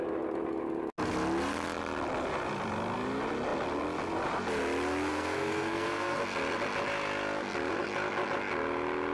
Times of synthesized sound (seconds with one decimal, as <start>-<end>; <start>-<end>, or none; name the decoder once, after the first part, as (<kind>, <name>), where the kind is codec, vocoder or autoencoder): 5.1-6.2 (codec, SNAC)